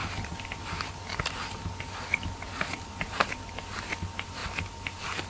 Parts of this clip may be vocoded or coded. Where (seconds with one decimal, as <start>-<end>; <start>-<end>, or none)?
2.8-4.4